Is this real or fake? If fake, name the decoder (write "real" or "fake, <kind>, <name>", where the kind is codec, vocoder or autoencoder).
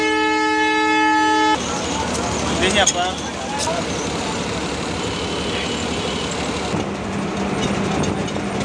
real